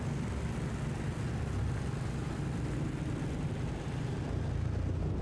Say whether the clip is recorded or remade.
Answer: recorded